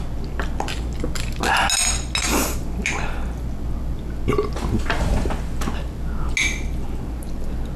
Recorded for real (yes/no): yes